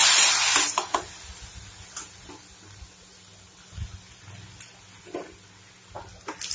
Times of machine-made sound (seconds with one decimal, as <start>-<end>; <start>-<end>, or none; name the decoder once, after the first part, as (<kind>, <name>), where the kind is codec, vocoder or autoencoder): none